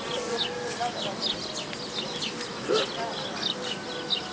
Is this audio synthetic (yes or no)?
no